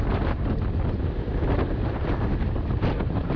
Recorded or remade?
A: remade